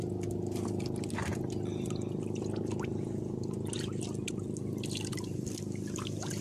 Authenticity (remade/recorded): recorded